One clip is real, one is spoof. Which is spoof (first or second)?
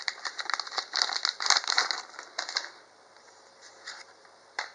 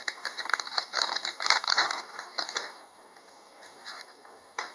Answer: second